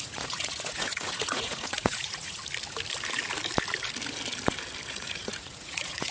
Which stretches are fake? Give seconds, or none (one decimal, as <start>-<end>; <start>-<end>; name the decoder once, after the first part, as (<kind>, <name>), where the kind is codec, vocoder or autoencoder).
0.0-2.4 (vocoder, Vocos); 4.9-6.1